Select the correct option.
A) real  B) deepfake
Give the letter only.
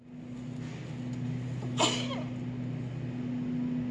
A